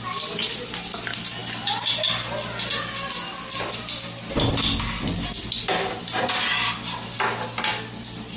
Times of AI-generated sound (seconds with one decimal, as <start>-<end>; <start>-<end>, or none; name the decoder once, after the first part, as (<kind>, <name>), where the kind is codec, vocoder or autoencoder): none